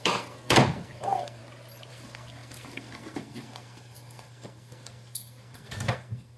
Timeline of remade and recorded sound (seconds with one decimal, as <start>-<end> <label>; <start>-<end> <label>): 0.0-1.4 remade; 1.4-1.9 recorded; 1.9-6.4 remade

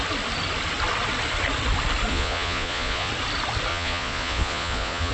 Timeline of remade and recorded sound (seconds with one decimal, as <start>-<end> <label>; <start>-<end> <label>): 0.0-2.1 recorded; 2.1-3.1 remade; 3.1-3.7 recorded; 3.7-5.1 remade